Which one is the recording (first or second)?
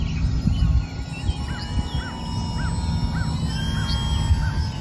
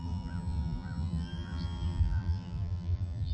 first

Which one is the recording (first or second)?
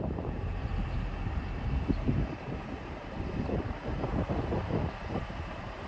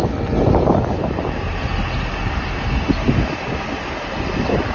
second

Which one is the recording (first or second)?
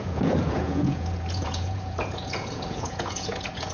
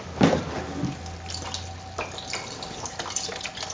second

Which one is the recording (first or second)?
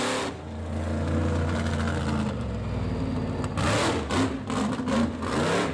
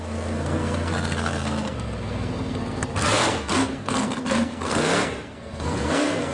first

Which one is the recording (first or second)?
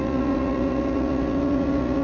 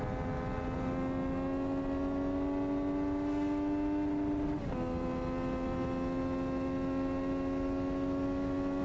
second